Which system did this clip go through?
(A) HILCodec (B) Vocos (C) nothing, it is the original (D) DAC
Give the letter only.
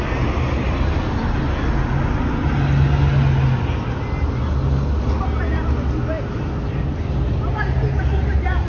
C